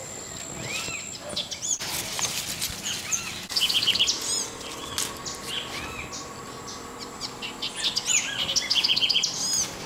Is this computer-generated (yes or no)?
no